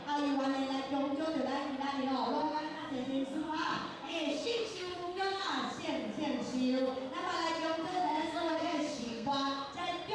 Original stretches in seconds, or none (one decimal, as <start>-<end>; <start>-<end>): 0.0-2.4; 5.5-7.9; 9.3-10.1